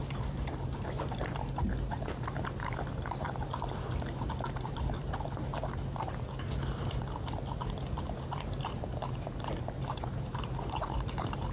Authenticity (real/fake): fake